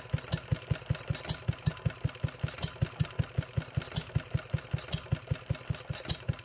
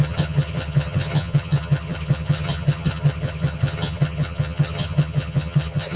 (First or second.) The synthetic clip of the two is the second